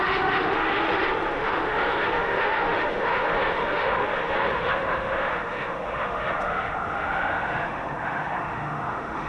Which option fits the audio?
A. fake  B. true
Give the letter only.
A